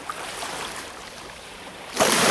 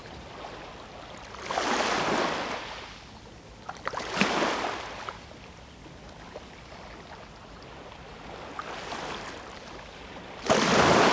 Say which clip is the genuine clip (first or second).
second